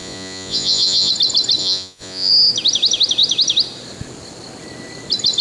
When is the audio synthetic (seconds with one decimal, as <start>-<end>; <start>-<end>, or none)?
0.0-1.1; 1.6-2.3